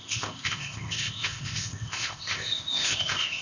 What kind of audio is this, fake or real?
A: fake